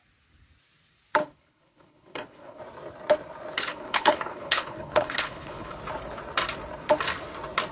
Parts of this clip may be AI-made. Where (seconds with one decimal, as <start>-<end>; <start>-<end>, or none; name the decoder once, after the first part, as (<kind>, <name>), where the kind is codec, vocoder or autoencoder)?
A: 1.2-2.6 (codec, HILCodec); 3.7-5.7